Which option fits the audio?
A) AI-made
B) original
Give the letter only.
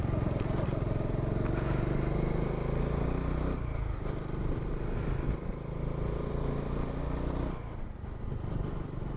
B